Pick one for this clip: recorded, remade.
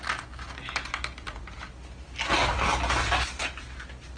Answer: recorded